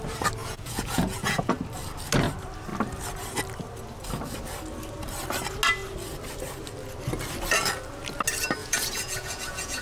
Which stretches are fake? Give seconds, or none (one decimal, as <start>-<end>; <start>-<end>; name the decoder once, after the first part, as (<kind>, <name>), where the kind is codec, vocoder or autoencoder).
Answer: 0.4-1.5 (vocoder, Vocos); 8.6-9.8

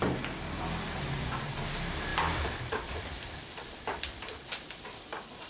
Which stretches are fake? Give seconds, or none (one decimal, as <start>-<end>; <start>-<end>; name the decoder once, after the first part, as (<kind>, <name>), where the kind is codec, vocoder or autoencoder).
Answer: none

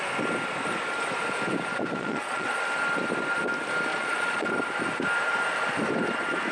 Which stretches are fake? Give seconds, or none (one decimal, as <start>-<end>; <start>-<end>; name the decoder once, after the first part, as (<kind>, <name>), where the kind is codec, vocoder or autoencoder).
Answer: 1.7-2.6 (vocoder, Vocos); 3.9-4.5

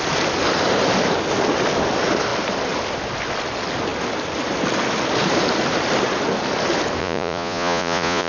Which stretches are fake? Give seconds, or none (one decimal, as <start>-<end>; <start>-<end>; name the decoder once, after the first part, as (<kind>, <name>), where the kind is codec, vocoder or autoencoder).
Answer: 7.0-8.3 (vocoder, Vocos)

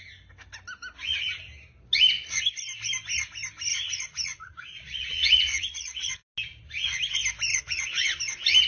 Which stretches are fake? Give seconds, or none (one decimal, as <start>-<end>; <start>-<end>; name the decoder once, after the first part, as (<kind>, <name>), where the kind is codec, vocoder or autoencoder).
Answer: 3.7-6.1 (vocoder, Vocos); 7.5-8.2

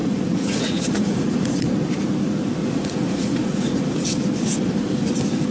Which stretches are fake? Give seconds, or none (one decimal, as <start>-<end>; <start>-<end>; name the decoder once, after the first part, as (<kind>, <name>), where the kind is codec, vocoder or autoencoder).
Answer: 0.0-1.7 (vocoder, Vocos); 2.6-3.9